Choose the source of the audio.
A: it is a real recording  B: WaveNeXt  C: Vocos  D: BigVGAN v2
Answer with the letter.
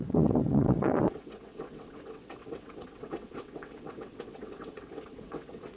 B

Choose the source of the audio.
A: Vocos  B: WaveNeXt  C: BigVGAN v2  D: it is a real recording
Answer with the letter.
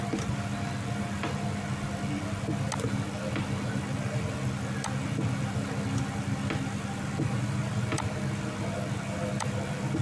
D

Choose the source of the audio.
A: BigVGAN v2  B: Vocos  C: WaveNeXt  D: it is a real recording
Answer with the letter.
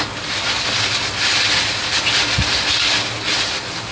D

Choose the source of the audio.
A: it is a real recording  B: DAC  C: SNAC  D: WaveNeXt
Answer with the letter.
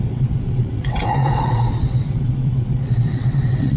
D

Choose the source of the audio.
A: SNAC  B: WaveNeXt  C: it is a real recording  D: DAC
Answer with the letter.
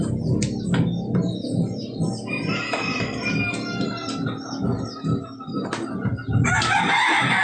C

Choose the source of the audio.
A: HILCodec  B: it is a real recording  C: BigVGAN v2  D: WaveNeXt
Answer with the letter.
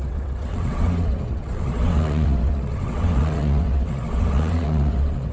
D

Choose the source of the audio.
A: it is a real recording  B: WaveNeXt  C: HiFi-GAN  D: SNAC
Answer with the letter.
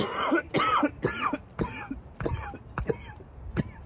A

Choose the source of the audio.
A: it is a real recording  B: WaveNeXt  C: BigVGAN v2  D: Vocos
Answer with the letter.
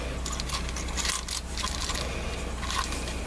A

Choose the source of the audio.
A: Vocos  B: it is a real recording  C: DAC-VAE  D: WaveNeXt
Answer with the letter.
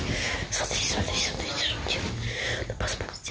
B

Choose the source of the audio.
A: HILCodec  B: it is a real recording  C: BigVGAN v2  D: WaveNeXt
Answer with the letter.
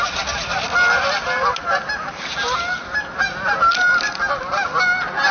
B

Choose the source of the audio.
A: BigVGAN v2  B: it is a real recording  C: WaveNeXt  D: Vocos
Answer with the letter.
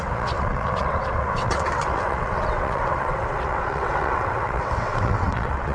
C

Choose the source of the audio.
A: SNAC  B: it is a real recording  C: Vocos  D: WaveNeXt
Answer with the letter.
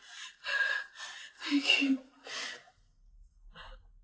B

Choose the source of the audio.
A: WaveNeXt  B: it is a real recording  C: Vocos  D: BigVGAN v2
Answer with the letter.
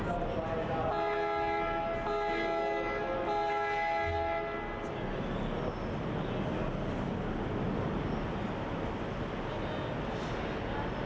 B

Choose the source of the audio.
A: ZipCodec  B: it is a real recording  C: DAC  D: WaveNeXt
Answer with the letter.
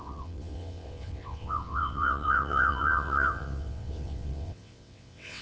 D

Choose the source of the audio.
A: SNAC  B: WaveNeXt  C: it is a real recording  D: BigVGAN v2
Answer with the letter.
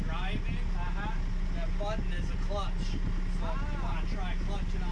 C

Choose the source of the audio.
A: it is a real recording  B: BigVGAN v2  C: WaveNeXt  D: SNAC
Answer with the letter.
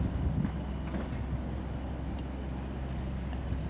A